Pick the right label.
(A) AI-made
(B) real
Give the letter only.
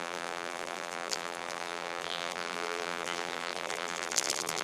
A